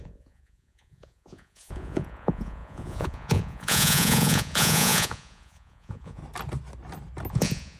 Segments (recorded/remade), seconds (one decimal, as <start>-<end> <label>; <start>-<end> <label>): 0.0-6.2 remade; 6.2-7.3 recorded; 7.3-7.8 remade